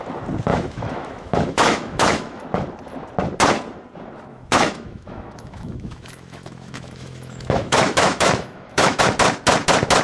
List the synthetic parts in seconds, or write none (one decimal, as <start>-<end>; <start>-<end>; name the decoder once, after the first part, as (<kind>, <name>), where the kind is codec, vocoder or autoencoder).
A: 0.5-2.4 (autoencoder, DAC-VAE); 4.3-9.0